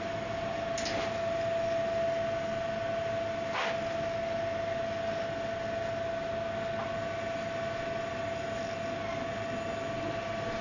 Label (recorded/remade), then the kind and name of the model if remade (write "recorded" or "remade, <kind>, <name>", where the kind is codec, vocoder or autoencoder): recorded